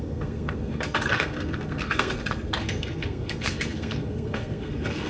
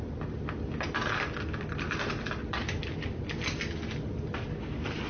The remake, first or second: first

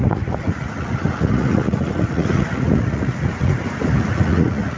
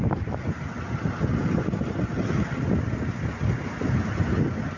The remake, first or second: first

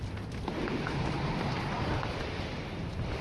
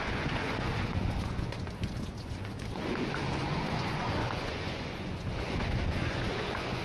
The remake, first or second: second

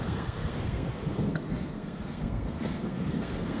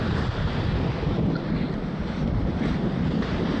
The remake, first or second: first